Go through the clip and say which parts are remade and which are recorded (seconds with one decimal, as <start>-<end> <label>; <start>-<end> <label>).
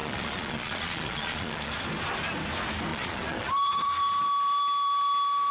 0.0-1.7 remade; 1.7-2.9 recorded; 2.9-3.5 remade; 3.5-5.5 recorded